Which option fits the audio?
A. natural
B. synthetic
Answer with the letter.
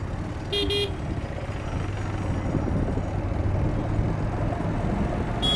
A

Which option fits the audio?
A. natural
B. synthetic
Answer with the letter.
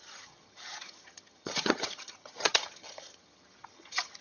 B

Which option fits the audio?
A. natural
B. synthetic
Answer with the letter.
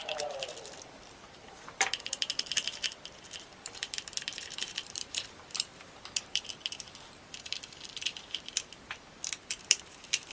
B